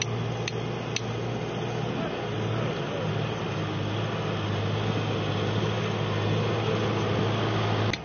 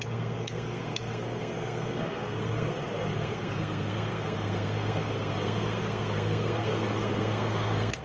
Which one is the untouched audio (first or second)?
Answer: first